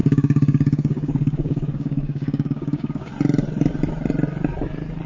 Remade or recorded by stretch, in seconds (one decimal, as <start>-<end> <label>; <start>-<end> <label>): 0.0-3.1 remade; 3.1-5.1 recorded